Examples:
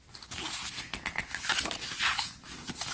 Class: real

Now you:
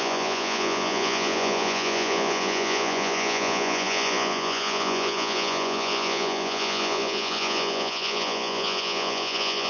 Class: fake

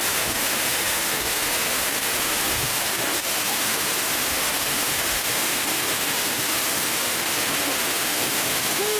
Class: fake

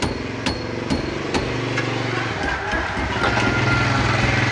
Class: real